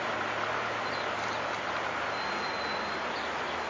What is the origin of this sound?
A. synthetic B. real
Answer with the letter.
B